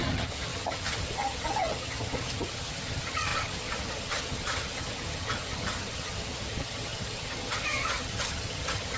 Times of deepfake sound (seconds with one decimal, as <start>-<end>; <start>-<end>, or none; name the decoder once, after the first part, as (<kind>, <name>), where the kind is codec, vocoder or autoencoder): 0.0-9.0 (vocoder, HiFi-GAN)